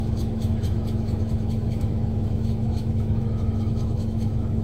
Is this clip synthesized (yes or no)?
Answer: yes